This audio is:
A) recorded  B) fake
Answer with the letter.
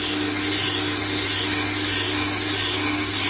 A